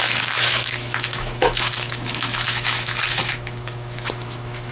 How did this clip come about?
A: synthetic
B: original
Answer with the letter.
A